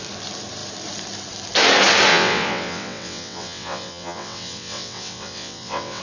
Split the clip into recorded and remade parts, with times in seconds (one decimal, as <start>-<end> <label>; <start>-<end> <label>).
0.0-2.1 recorded; 2.1-6.0 remade